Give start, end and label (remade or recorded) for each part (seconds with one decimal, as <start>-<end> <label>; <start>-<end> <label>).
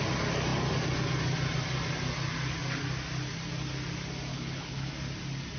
0.0-4.3 recorded; 4.3-4.9 remade; 4.9-5.6 recorded